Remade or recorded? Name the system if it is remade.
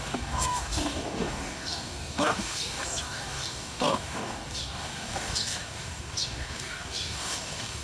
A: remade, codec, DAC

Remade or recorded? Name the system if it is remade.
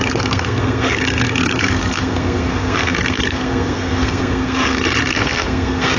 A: remade, codec, SNAC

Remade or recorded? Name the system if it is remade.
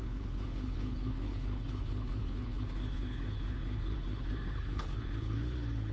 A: remade, codec, HILCodec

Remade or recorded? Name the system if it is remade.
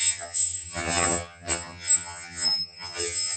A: remade, vocoder, HiFi-GAN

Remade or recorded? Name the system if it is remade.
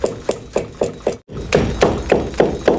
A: recorded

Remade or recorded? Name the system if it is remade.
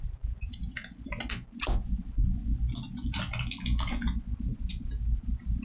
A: recorded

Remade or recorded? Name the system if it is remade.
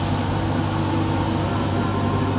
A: recorded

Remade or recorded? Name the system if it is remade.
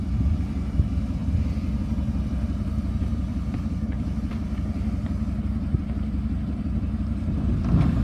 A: remade, vocoder, BigVGAN v2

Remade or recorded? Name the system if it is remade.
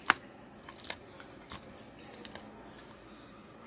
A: recorded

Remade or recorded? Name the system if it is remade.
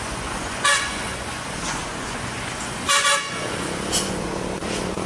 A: remade, vocoder, Vocos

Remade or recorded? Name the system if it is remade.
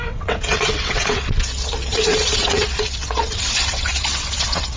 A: remade, vocoder, WaveNeXt